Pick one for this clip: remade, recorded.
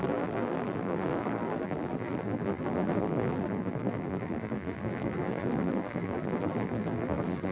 remade